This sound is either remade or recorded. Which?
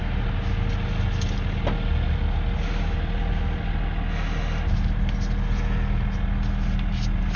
recorded